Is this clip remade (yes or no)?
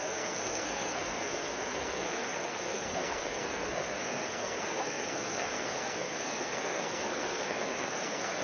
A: yes